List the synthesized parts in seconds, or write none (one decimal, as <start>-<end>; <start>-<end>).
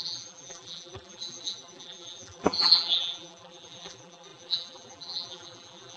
0.0-6.0